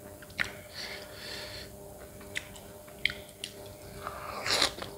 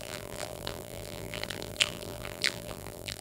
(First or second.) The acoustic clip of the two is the first